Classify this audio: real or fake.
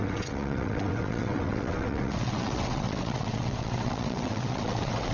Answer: fake